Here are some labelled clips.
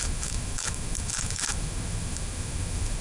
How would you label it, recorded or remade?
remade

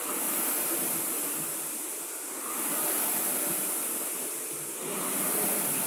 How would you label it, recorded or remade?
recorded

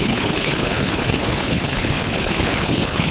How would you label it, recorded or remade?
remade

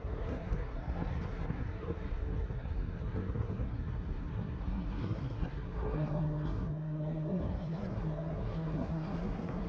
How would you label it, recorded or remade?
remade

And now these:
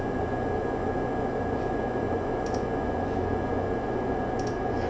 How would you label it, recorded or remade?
remade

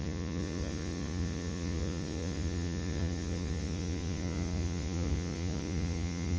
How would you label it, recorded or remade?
remade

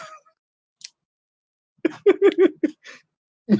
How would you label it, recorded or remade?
recorded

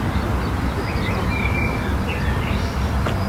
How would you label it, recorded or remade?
recorded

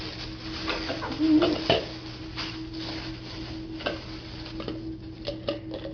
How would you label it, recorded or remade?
recorded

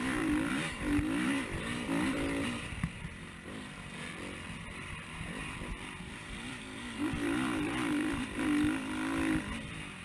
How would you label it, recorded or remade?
remade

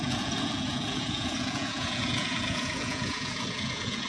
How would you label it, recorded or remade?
remade